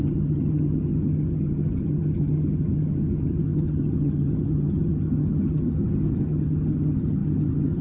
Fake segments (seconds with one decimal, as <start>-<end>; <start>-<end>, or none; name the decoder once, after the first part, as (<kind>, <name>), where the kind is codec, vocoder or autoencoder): 0.0-7.8 (vocoder, HiFi-GAN)